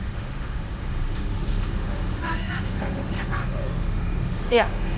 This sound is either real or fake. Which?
fake